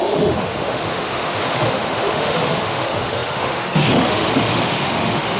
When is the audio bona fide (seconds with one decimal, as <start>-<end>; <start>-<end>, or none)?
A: none